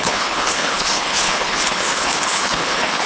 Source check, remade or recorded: remade